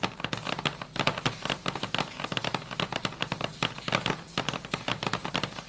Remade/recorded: recorded